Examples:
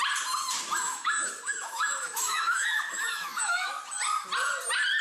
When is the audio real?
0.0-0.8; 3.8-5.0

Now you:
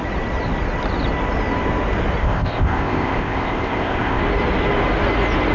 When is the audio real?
0.0-2.2; 4.2-5.5

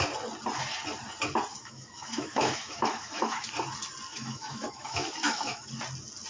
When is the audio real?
0.0-1.5; 3.5-4.1; 5.7-6.3